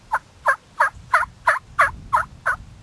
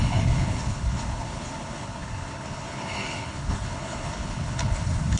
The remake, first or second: second